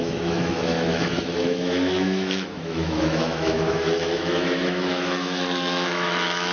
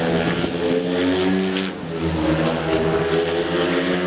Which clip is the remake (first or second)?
first